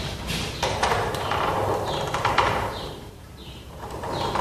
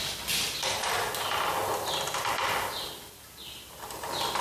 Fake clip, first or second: first